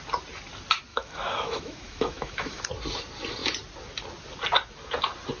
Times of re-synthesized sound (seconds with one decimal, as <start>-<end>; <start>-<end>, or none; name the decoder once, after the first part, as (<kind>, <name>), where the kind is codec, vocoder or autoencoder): 0.9-2.6 (autoencoder, DAC-VAE)